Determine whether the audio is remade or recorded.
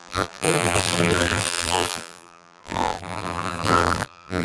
remade